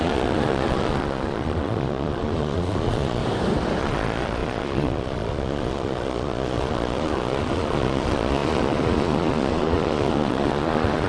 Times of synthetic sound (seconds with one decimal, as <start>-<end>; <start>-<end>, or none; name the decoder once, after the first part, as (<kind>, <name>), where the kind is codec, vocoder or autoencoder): 0.0-3.2 (vocoder, Vocos); 3.8-11.1